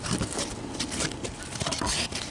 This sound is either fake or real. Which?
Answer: real